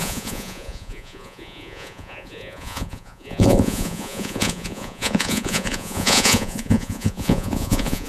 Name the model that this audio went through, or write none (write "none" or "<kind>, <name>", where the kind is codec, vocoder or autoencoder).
vocoder, Vocos